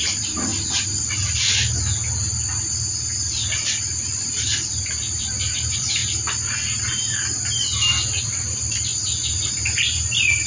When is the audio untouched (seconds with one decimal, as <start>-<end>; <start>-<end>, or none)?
0.5-3.3; 6.0-8.2; 8.9-9.5